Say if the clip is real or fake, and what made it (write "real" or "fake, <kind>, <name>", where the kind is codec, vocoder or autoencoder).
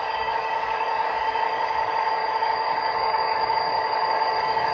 fake, codec, DAC